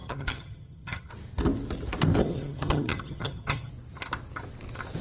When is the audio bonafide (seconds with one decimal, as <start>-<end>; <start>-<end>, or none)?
1.1-2.2; 3.7-5.0